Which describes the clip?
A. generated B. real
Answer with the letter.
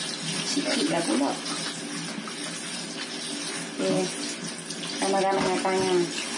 B